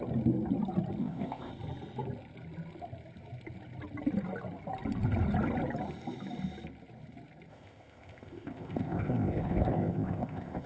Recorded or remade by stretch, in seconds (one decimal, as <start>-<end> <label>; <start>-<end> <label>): 0.0-1.0 recorded; 1.0-1.5 remade; 1.5-7.5 recorded; 7.5-10.7 remade